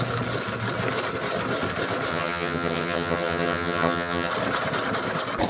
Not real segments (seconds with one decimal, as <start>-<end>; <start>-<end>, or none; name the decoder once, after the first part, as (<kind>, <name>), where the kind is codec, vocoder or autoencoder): 2.1-4.3 (vocoder, HiFi-GAN)